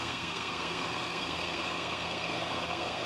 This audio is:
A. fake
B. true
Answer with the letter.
A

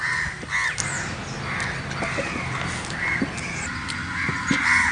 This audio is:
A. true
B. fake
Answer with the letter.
A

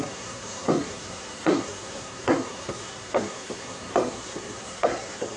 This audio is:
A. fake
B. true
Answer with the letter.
A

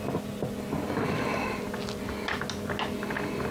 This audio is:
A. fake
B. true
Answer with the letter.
B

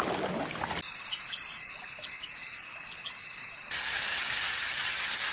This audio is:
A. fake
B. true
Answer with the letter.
B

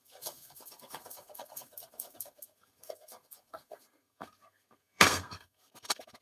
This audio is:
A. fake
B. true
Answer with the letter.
A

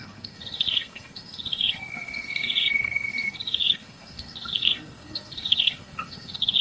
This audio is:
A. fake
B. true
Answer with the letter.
A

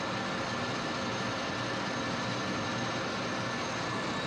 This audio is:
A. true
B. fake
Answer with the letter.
A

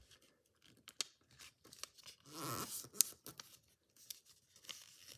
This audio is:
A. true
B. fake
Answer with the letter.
A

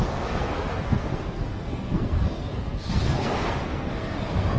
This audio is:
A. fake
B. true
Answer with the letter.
A